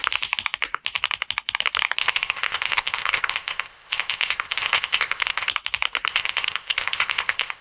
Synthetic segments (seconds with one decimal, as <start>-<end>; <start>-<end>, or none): 2.0-5.5; 6.1-7.6